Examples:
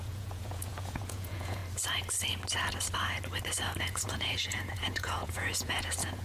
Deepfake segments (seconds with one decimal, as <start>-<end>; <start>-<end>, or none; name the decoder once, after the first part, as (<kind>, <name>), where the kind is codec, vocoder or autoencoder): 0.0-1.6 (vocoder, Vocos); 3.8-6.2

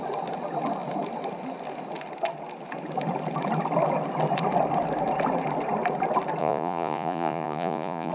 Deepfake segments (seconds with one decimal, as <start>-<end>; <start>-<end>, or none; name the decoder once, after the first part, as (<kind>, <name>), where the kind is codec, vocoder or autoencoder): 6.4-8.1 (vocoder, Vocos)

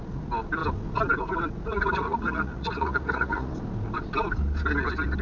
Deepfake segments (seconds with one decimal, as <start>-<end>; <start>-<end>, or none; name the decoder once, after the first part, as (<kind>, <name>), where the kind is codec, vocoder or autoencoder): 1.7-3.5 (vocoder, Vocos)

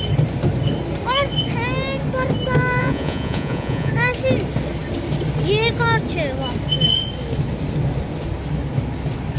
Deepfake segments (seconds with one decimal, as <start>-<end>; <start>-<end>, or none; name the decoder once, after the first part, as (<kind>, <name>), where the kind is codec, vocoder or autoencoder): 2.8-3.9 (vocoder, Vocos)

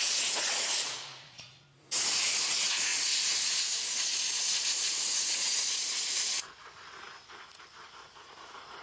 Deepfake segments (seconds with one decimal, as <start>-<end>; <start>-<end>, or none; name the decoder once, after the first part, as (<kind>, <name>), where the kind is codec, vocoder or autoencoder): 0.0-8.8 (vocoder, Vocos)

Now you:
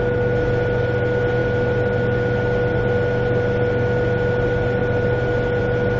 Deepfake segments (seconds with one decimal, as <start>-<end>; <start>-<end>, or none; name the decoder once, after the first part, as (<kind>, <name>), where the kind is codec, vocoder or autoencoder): none

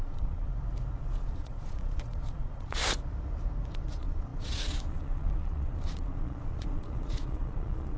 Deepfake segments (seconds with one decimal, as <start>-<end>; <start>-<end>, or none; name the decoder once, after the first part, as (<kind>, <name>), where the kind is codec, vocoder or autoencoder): 0.0-0.5 (vocoder, Vocos); 1.0-2.8; 3.9-8.0